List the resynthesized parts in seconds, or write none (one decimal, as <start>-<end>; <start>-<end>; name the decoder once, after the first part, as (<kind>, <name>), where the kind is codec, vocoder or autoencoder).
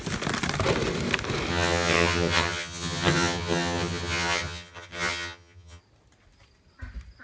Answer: 1.5-5.8 (vocoder, HiFi-GAN)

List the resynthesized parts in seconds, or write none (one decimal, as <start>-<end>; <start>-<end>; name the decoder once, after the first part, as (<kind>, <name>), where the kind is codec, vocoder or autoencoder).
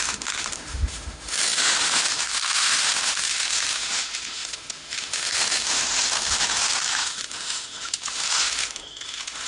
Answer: 0.0-9.5 (autoencoder, DAC-VAE)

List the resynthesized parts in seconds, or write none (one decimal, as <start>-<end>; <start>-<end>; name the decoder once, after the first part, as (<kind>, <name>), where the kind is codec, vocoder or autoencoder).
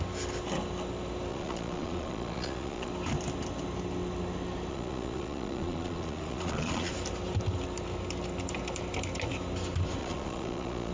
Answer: 1.3-2.9 (vocoder, Vocos); 4.7-6.9; 10.0-10.9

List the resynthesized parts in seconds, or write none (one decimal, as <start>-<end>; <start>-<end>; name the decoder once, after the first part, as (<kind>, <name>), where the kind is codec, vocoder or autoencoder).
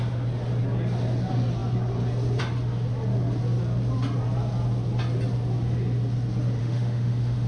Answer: 6.6-7.5 (autoencoder, DAC-VAE)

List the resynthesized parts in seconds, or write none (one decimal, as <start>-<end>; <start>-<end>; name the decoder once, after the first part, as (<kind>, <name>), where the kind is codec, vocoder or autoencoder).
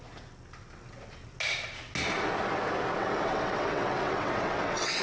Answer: 3.0-5.0 (vocoder, WaveNeXt)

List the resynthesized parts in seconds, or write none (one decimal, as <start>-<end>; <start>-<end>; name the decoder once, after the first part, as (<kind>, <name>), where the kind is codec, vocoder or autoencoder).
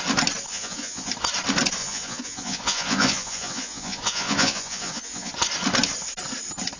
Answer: 0.5-1.1 (vocoder, Vocos); 1.8-5.3